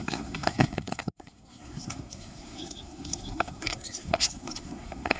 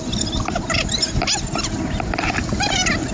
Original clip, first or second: second